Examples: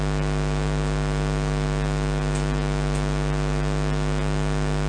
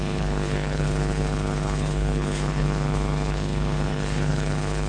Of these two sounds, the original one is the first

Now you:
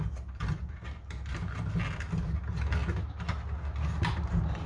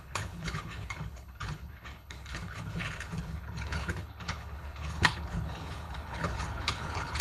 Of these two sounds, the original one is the first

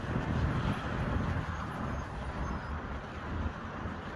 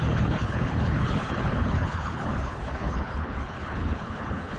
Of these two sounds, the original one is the first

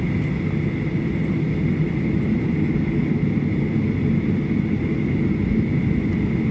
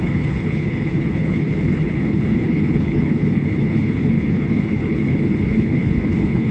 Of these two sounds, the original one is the first